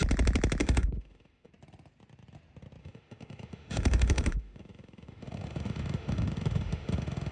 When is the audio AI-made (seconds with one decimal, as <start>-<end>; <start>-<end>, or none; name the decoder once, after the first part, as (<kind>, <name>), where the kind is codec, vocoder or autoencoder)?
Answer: 0.6-1.5 (autoencoder, DAC-VAE); 2.8-7.3